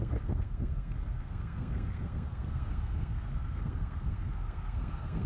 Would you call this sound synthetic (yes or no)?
yes